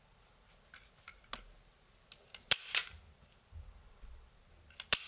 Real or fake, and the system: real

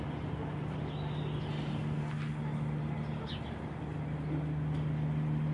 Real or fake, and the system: real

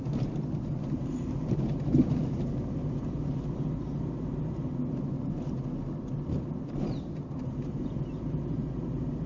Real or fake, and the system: real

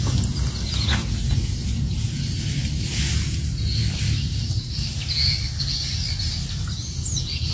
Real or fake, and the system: real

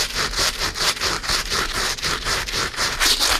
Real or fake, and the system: fake, vocoder, BigVGAN v2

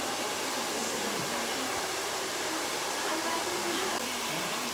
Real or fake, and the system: fake, vocoder, BigVGAN v2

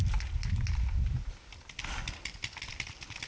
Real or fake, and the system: real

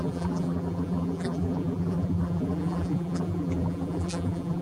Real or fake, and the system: fake, vocoder, BigVGAN v2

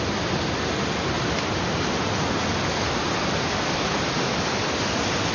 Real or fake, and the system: real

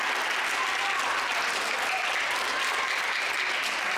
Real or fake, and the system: real